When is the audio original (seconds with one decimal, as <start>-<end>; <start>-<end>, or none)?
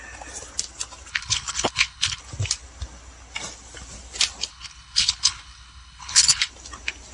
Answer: 0.0-1.1; 2.2-4.5; 6.5-7.1